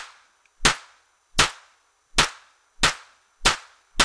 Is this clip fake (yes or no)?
no